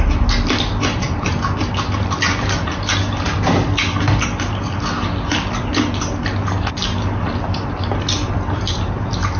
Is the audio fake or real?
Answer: real